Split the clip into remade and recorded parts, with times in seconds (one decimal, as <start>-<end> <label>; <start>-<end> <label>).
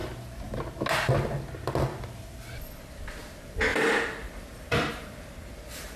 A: 0.0-0.6 remade; 0.6-3.7 recorded; 3.7-5.4 remade; 5.4-6.0 recorded